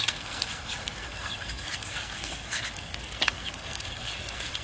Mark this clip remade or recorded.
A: remade